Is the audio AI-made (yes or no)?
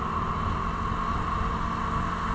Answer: no